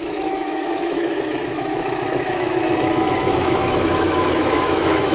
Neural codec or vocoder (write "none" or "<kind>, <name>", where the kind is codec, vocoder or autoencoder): autoencoder, DAC-VAE